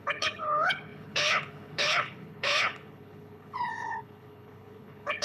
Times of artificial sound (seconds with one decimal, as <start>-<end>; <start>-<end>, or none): 0.0-5.2